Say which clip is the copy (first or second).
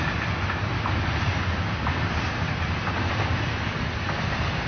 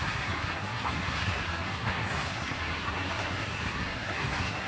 second